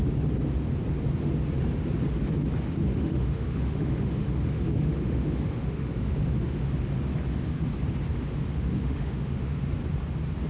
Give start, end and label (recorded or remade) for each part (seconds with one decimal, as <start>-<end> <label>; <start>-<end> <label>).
0.0-2.9 recorded; 2.9-6.7 remade; 6.7-8.1 recorded; 8.1-9.8 remade; 9.8-10.5 recorded